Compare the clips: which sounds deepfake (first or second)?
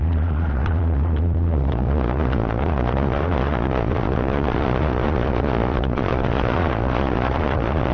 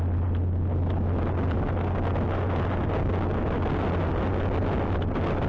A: first